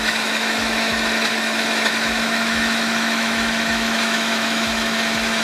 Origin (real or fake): fake